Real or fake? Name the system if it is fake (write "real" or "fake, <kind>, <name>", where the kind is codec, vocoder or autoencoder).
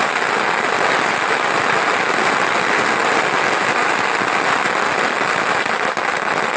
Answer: real